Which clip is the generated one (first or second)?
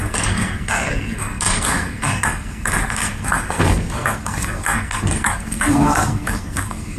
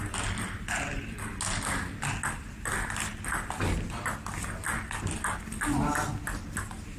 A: first